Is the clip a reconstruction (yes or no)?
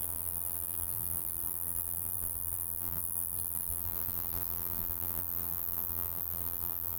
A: yes